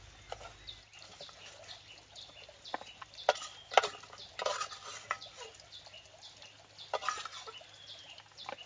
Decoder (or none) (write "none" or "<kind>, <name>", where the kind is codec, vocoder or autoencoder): none